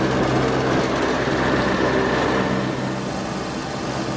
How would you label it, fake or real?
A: real